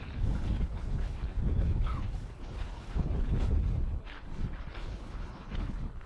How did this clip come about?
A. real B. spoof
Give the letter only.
B